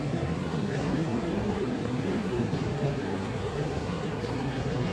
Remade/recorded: remade